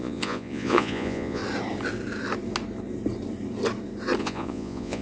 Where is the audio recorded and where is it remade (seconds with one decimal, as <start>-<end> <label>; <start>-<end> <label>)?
0.0-1.4 remade; 1.4-4.2 recorded; 4.2-5.0 remade